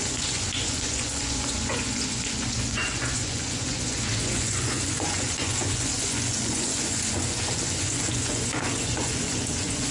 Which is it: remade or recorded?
remade